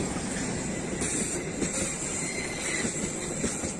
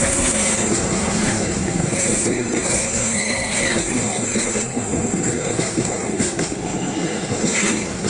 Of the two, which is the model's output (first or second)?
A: second